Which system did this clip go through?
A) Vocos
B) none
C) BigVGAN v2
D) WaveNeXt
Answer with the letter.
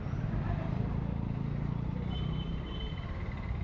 C